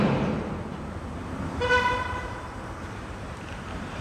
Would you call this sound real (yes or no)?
no